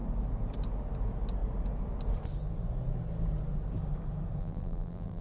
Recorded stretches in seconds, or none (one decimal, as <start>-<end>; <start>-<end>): 0.0-4.4